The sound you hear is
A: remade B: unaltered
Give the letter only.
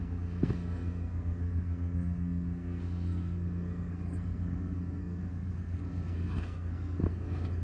A